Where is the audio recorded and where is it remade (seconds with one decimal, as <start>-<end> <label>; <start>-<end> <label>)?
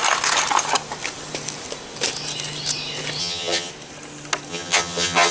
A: 0.0-3.2 recorded; 3.2-3.7 remade; 3.7-4.5 recorded; 4.5-5.3 remade